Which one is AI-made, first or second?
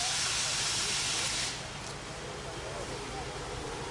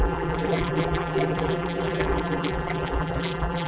second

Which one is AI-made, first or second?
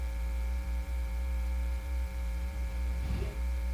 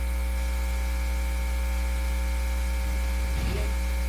first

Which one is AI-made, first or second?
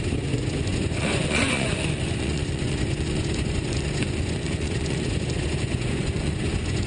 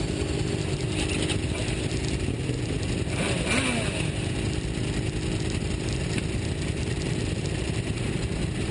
first